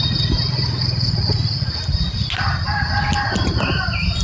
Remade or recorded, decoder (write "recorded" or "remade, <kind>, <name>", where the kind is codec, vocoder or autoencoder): recorded